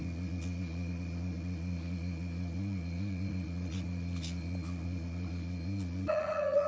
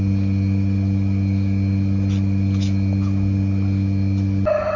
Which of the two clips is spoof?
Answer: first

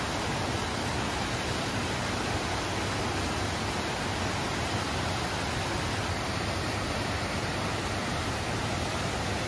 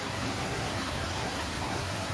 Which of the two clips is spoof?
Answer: second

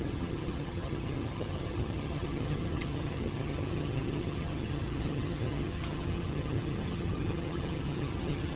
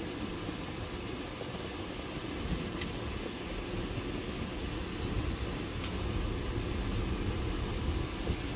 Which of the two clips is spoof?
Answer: first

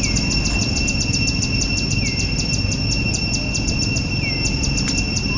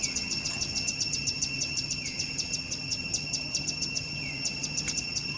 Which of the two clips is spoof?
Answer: second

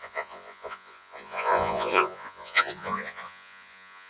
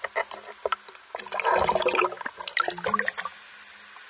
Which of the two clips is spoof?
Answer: first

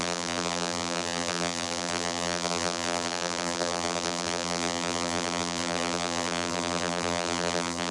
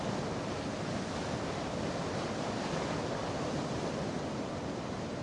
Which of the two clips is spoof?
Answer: first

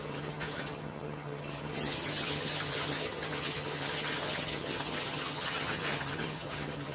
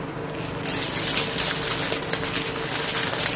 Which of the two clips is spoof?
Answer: first